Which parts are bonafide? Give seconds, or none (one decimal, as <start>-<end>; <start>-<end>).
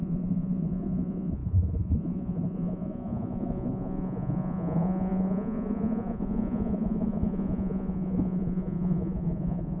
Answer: none